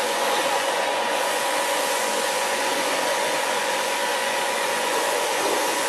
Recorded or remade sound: remade